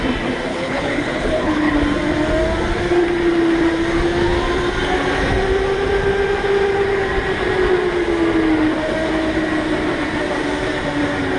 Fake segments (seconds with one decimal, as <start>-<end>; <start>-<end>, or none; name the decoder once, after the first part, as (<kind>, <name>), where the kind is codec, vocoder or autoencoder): 0.5-1.7 (codec, HILCodec)